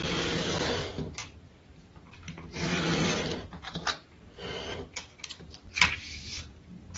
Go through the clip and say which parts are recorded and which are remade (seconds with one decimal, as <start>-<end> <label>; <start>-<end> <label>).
0.0-7.0 recorded